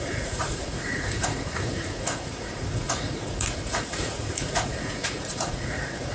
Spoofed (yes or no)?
yes